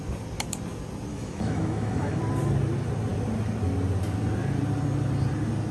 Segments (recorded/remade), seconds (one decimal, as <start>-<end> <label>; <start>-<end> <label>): 0.0-1.1 recorded; 1.1-2.2 remade; 2.2-5.7 recorded